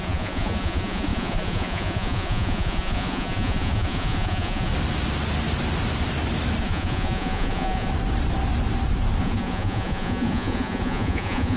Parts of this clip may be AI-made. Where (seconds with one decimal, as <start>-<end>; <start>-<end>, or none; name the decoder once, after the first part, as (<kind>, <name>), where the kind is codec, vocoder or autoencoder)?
0.0-4.7 (vocoder, Vocos); 6.6-7.9; 9.2-11.6